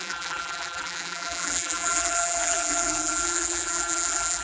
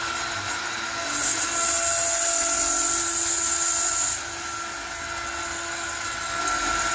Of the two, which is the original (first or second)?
second